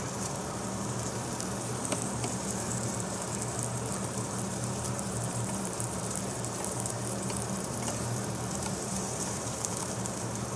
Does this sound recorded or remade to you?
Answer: remade